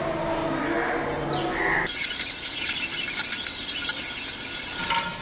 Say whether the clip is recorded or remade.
recorded